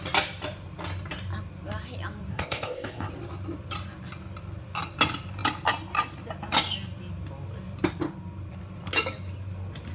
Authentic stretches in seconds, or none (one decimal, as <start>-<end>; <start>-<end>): 0.0-2.3; 3.1-9.9